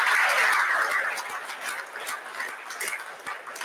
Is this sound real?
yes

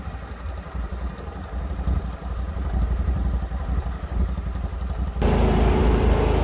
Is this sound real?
yes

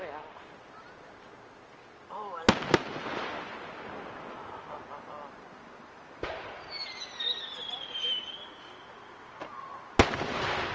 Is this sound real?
yes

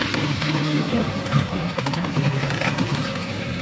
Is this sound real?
no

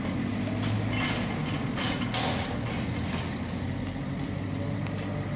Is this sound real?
yes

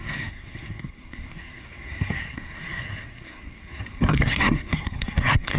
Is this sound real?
no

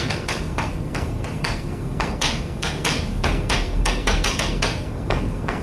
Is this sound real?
no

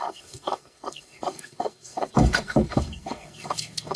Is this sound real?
no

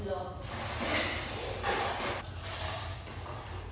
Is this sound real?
yes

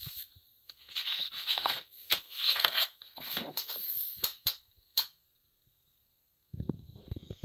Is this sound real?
no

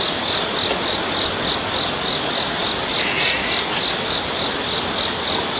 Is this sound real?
yes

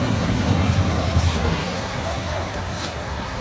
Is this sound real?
no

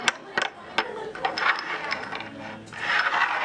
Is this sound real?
yes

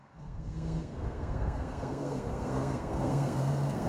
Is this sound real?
no